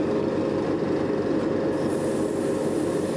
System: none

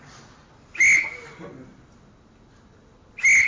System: none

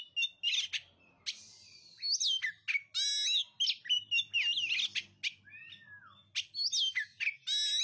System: none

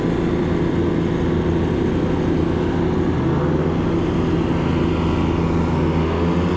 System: none